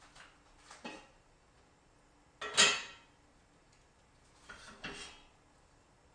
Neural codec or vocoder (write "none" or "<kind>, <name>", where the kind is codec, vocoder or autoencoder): none